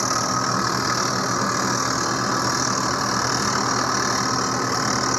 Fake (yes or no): no